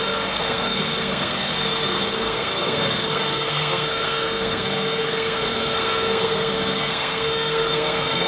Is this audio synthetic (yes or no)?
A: yes